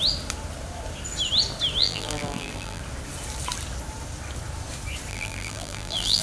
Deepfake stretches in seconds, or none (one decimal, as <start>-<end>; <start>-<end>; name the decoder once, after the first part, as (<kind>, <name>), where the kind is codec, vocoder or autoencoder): 1.8-2.8 (vocoder, BigVGAN v2); 5.1-6.2